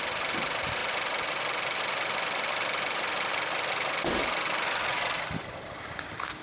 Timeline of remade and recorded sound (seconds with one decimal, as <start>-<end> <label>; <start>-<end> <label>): 0.0-6.4 recorded